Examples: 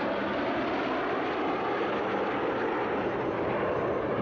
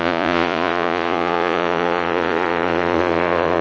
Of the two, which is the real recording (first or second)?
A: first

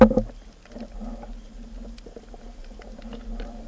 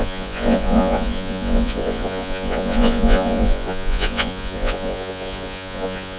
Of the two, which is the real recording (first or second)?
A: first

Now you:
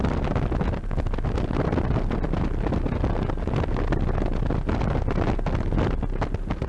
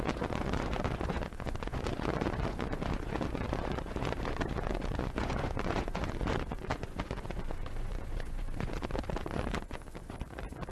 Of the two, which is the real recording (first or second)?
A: first